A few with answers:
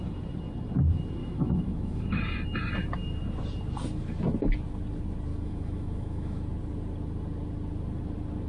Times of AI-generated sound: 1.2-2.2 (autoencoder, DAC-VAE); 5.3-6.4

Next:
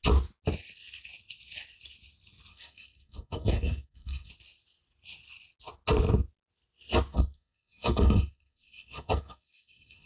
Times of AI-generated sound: 2.5-4.3 (codec, SNAC); 7.1-10.1

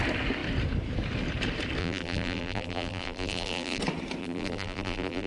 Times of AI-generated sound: 1.8-3.8 (vocoder, BigVGAN v2); 4.2-5.3

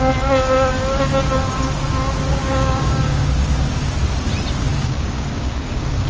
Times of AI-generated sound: 2.3-3.9 (codec, DAC); 4.7-6.1

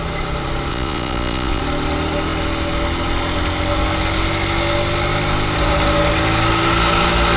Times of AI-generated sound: 0.7-1.6 (vocoder, Vocos)